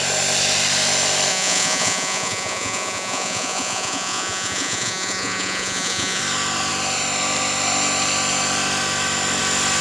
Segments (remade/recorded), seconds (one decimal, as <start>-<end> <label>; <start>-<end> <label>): 0.0-1.3 recorded; 1.3-6.2 remade; 6.2-9.8 recorded